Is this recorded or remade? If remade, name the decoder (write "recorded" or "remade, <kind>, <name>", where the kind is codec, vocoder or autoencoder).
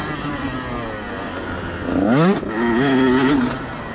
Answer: recorded